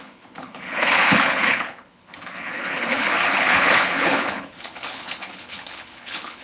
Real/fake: fake